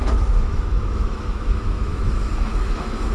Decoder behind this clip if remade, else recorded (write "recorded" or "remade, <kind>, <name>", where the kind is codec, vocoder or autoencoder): remade, autoencoder, DAC-VAE